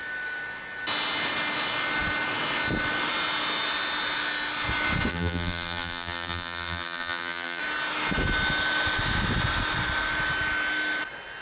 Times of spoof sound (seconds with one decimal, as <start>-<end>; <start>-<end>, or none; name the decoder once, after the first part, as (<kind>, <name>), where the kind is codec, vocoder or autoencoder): 5.1-7.6 (vocoder, BigVGAN v2)

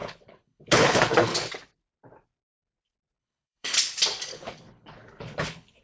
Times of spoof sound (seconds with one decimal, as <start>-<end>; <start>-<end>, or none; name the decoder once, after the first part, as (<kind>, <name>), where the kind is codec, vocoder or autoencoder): 0.0-1.3 (codec, HILCodec); 3.2-3.7; 4.3-5.8

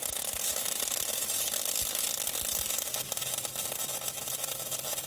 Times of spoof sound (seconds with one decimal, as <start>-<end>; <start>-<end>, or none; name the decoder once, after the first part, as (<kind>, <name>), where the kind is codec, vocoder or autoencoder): none

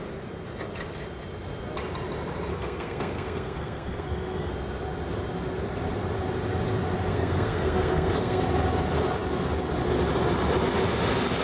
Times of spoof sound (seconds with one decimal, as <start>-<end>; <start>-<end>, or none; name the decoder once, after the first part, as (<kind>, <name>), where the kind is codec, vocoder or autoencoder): 2.5-4.5 (codec, SNAC); 7.1-8.4

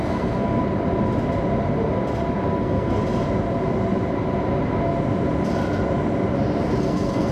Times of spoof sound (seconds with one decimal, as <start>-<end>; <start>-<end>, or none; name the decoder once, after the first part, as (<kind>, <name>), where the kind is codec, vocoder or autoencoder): 0.0-0.6 (codec, SNAC); 2.5-3.0; 6.8-7.3

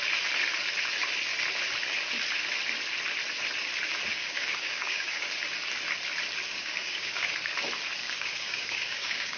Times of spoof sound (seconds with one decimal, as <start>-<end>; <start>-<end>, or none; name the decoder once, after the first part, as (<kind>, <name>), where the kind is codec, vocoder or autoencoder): 4.1-5.4 (codec, DAC); 6.5-7.3; 8.0-9.4